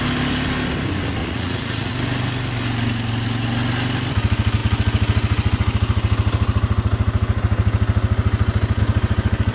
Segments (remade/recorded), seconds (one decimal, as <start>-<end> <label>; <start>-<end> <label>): 0.0-1.2 recorded; 1.2-1.9 remade; 1.9-9.5 recorded